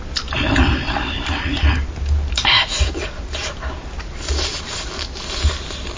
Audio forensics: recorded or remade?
recorded